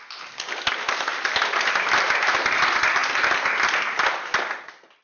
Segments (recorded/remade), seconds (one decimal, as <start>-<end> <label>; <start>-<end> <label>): 0.0-1.1 recorded; 1.1-2.4 remade; 2.4-5.0 recorded